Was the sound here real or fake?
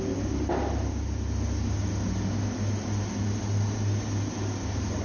real